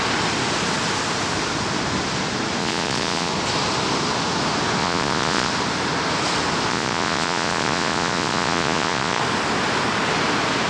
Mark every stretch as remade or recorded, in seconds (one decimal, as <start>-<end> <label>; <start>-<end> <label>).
0.0-2.6 recorded; 2.6-3.3 remade; 3.3-4.8 recorded; 4.8-5.5 remade; 5.5-6.7 recorded; 6.7-9.2 remade; 9.2-10.7 recorded